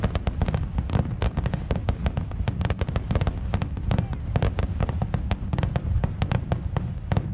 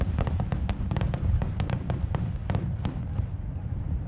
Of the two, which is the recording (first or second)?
first